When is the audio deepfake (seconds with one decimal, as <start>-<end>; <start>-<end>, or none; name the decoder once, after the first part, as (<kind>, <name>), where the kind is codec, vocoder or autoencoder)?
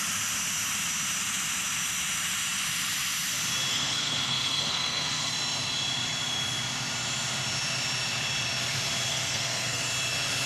3.7-5.3 (codec, SNAC); 9.1-9.8